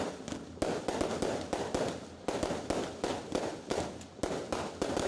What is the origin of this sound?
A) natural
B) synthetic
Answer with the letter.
A